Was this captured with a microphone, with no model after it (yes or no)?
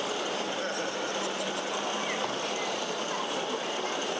yes